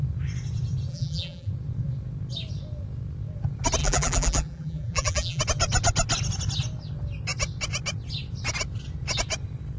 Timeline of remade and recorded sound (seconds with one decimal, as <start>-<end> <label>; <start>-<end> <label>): 0.0-0.9 recorded; 0.9-1.5 remade; 1.5-3.8 recorded; 3.8-5.4 remade; 5.4-9.8 recorded